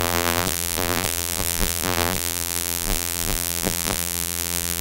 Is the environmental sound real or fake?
fake